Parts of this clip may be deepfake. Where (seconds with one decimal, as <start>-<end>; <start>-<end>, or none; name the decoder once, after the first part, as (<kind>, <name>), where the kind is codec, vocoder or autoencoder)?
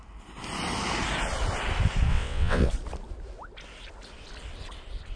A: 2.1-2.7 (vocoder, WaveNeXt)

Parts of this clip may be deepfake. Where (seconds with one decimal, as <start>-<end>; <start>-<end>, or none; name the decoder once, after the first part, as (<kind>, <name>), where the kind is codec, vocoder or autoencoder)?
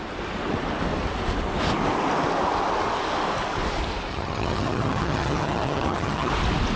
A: 4.1-6.3 (vocoder, HiFi-GAN)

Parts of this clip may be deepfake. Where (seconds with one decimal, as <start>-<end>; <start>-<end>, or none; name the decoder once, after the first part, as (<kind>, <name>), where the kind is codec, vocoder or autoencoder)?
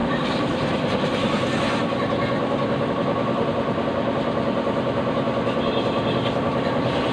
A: none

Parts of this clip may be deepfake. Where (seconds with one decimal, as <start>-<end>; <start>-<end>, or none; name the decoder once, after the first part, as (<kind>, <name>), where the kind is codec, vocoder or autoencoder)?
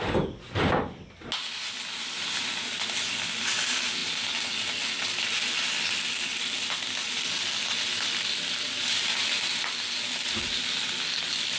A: none